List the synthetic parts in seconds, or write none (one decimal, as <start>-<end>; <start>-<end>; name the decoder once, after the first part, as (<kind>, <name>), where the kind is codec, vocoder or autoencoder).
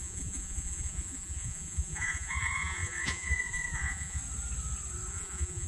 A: 0.0-4.2 (vocoder, Vocos); 5.1-5.7